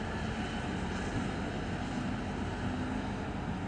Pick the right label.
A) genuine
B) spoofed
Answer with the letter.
A